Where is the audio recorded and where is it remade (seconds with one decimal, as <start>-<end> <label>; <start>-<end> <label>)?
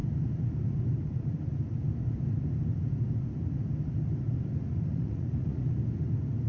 0.0-4.9 recorded; 4.9-5.8 remade; 5.8-6.5 recorded